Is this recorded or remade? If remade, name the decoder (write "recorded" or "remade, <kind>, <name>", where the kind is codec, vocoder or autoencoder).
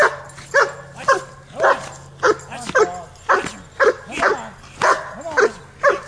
recorded